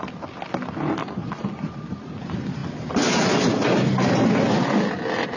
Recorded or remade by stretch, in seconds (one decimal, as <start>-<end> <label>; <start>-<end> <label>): 0.0-5.4 recorded